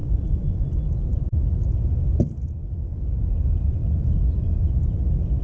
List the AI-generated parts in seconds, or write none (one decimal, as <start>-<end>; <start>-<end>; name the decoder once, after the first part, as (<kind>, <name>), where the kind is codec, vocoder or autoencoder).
0.0-0.7 (vocoder, Vocos)